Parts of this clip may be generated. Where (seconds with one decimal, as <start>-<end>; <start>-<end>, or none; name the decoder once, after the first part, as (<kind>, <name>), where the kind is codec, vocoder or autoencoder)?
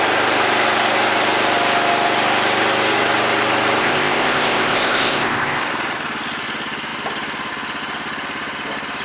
3.8-5.6 (codec, ZipCodec)